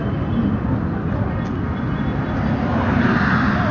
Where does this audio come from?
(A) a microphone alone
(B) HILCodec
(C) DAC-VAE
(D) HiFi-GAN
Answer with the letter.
A